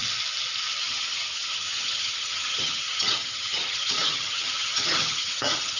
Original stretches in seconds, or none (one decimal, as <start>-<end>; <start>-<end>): 0.0-0.8